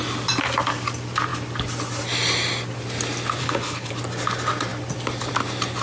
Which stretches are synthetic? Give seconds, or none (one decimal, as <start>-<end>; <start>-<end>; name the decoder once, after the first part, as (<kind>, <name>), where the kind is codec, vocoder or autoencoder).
3.4-3.9 (codec, HILCodec)